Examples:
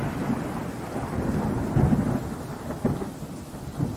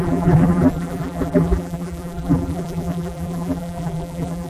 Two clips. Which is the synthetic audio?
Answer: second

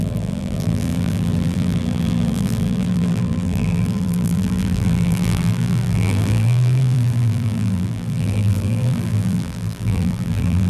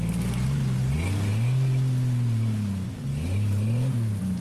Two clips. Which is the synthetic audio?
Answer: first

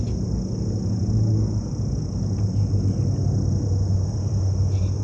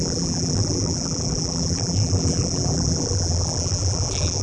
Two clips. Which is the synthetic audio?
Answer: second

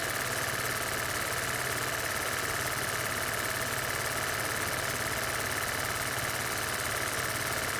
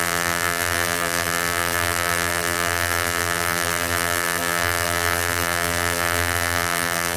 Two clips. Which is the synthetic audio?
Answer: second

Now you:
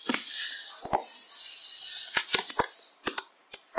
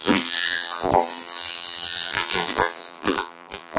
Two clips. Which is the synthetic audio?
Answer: second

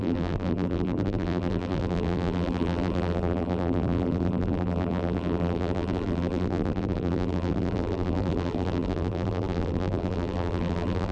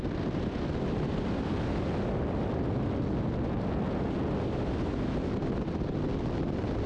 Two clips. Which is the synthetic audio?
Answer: first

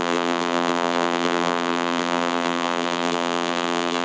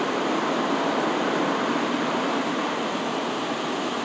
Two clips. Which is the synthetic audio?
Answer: first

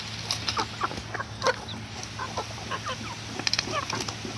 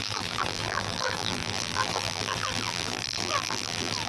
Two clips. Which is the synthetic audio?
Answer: second